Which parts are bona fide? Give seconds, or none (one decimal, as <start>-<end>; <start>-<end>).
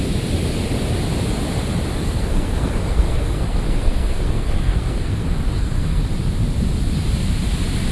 0.0-2.0; 6.0-7.9